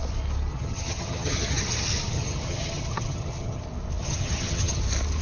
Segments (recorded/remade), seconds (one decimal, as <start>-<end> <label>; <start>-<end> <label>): 0.0-0.5 recorded; 0.5-3.6 remade; 3.6-4.0 recorded; 4.0-4.8 remade; 4.8-5.2 recorded